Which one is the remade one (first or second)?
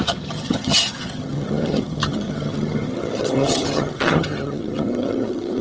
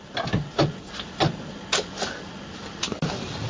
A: first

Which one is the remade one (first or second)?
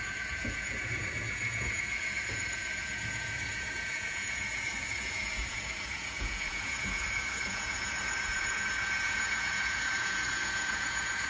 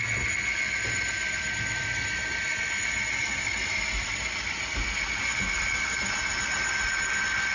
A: first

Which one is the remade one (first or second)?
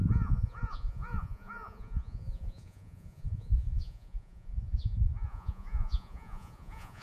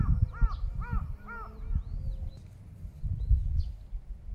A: first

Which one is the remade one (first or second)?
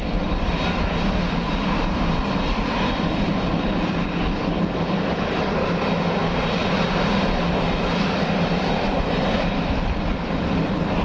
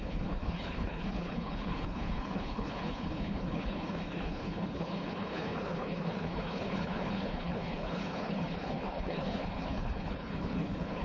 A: second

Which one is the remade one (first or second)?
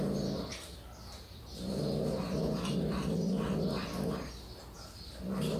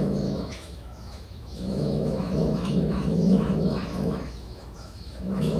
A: second